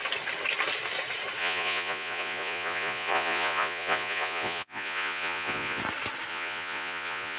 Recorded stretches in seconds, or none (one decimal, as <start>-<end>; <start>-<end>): 0.0-1.4; 5.8-6.3